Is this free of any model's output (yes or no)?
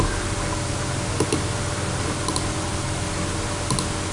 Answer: yes